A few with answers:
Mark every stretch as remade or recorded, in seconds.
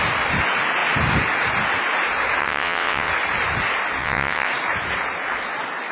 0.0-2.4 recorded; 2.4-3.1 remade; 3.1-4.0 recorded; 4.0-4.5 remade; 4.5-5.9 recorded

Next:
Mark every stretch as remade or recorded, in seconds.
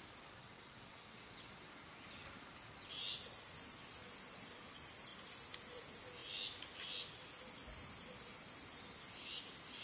0.0-0.4 recorded; 0.4-1.5 remade; 1.5-9.8 recorded